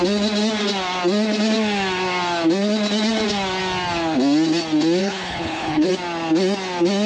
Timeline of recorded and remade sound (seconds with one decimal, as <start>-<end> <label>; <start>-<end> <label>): 0.0-5.0 recorded; 5.0-5.9 remade; 5.9-7.1 recorded